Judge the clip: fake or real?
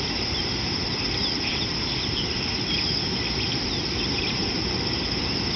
real